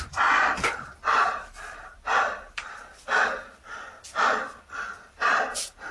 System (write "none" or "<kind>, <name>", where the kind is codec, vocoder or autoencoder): none